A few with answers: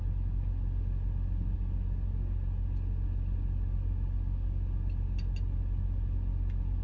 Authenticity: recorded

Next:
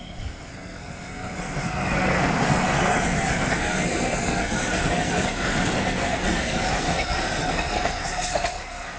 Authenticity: remade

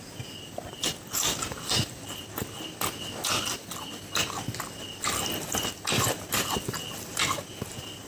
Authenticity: recorded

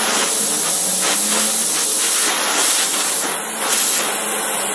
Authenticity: recorded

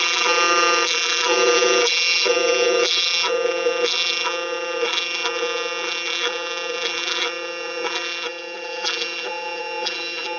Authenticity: remade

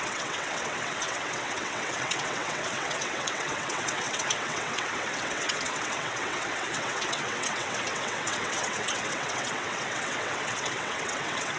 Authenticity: remade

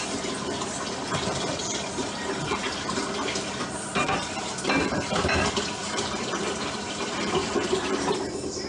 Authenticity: remade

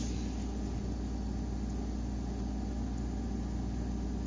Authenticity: recorded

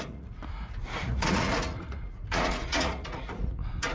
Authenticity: remade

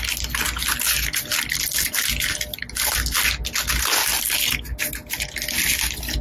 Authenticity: recorded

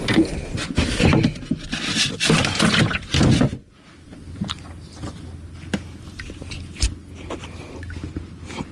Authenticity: recorded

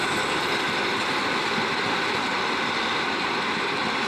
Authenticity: recorded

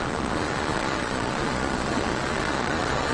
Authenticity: remade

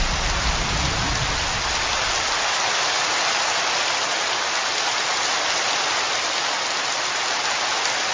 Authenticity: recorded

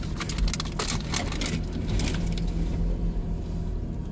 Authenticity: recorded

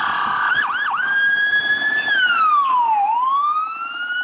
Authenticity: recorded